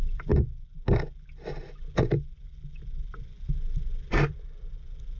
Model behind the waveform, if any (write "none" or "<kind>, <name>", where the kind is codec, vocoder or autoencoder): none